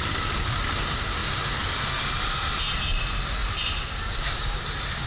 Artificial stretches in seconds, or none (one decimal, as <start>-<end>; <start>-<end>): none